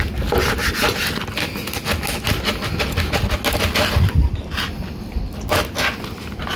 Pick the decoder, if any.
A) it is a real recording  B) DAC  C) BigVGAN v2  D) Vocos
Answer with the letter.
A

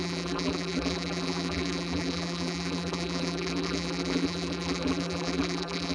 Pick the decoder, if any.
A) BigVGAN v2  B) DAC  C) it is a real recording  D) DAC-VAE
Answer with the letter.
A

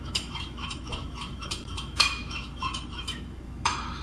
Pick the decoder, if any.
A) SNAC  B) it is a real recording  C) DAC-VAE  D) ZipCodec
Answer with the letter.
C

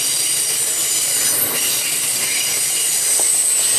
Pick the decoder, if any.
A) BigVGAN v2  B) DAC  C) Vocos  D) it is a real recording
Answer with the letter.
D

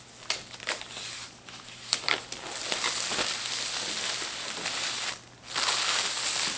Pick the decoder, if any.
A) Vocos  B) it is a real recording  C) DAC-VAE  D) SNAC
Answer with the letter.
B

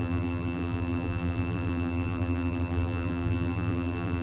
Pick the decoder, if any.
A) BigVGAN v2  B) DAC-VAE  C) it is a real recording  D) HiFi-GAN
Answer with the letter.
A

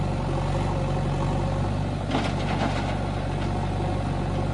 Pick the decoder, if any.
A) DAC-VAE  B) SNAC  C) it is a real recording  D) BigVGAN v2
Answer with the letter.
C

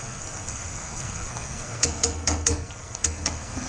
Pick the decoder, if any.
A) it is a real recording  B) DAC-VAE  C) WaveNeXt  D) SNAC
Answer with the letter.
D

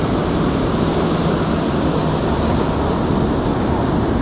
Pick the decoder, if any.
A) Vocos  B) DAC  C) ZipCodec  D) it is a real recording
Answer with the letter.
D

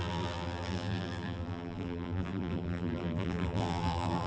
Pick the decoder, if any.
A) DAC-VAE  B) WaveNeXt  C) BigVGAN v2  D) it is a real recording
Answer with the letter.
C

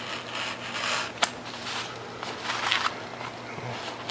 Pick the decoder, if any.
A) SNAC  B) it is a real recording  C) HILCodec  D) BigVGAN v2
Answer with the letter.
B